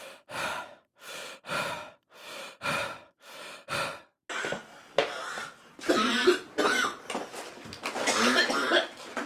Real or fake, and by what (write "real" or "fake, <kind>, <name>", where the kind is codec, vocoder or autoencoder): real